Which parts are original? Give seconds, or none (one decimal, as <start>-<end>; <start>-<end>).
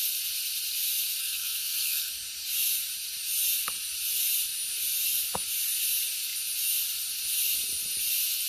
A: 0.0-1.2; 2.1-8.5